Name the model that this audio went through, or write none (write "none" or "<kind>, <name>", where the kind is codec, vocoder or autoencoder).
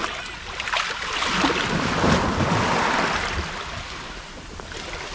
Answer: none